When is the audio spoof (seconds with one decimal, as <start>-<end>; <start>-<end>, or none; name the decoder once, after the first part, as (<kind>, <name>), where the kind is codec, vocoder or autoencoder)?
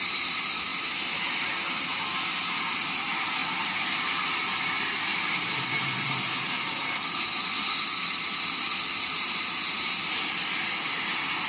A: none